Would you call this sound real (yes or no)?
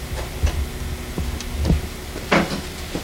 yes